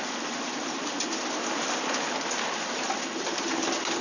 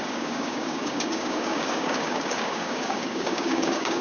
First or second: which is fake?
second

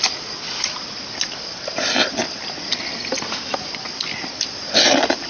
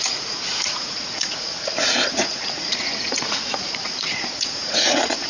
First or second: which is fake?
second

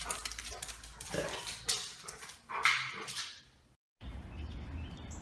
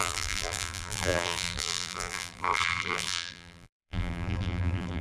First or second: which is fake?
second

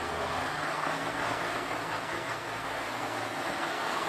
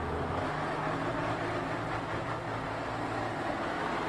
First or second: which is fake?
first